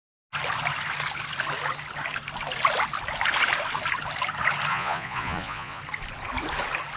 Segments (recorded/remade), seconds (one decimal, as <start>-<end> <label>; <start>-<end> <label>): 0.0-4.7 recorded; 4.7-5.8 remade; 5.8-7.0 recorded